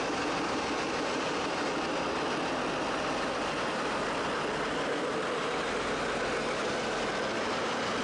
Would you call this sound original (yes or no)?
yes